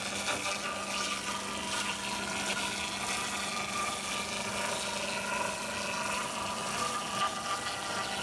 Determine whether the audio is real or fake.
real